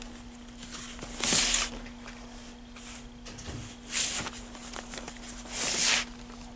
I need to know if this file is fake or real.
real